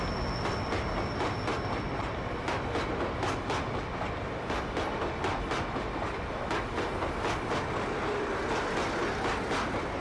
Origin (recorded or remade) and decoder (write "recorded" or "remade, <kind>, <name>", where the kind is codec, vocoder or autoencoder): recorded